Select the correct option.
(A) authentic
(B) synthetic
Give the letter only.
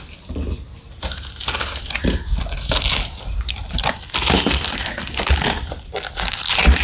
A